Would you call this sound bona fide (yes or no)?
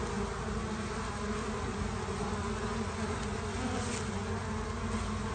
yes